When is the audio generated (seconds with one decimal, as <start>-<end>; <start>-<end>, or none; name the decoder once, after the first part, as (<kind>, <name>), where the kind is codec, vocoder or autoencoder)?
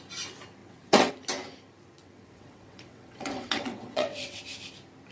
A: 0.6-1.1 (vocoder, WaveNeXt); 2.0-4.4